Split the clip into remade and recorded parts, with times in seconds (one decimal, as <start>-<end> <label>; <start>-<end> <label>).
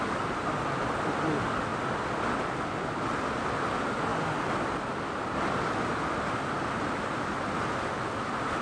0.0-8.6 recorded